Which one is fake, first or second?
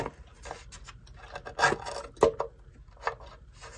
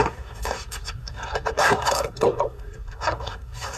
second